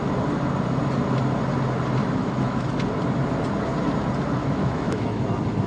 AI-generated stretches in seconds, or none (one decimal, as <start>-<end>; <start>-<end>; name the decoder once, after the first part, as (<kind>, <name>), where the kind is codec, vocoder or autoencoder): 2.0-2.7 (autoencoder, DAC-VAE); 4.4-5.2